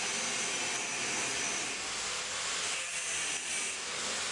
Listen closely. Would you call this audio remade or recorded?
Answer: recorded